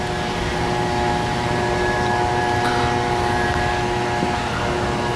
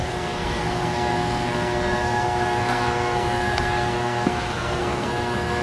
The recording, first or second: first